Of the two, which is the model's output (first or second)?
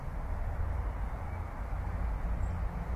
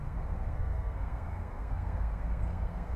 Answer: second